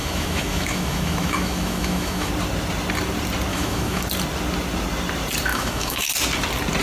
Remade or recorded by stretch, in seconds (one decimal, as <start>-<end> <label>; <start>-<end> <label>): 0.0-2.3 remade; 2.3-3.5 recorded; 3.5-4.0 remade; 4.0-5.5 recorded; 5.5-6.1 remade; 6.1-6.8 recorded